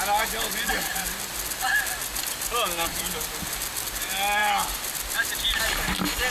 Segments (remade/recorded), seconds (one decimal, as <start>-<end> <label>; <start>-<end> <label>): 0.0-6.3 recorded